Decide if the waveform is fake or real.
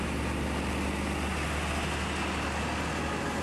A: real